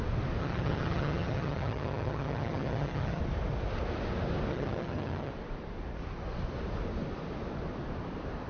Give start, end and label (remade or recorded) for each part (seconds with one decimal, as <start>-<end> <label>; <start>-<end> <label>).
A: 0.0-0.4 recorded; 0.4-3.2 remade; 3.2-4.5 recorded; 4.5-5.3 remade; 5.3-8.5 recorded